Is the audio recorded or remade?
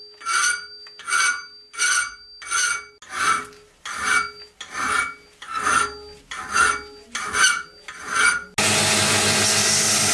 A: recorded